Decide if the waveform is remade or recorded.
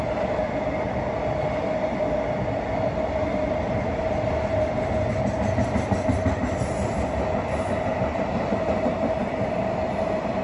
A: recorded